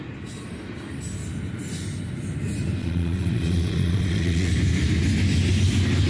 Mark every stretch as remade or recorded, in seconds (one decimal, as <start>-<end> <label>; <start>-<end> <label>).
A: 0.0-2.8 recorded; 2.8-4.5 remade; 4.5-6.1 recorded